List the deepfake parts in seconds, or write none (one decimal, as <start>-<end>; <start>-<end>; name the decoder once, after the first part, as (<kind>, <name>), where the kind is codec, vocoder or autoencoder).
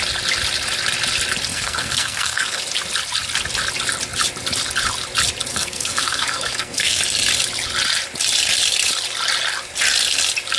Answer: 1.5-2.6 (codec, SNAC); 5.5-7.0